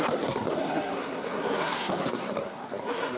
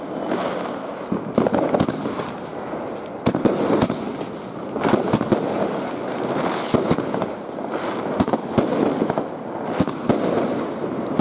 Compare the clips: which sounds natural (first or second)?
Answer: second